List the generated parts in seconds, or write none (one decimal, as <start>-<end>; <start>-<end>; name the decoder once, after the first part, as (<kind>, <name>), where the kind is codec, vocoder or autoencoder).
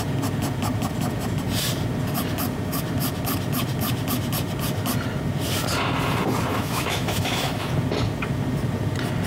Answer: 6.5-7.7 (autoencoder, DAC-VAE)